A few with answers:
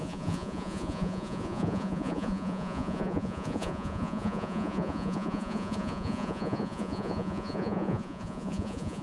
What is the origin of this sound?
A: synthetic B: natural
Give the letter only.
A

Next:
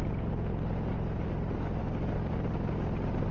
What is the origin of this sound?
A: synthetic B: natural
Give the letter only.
B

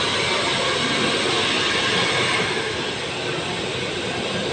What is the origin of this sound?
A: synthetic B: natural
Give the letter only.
B